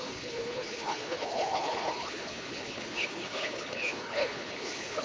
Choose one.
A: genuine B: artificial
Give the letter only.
B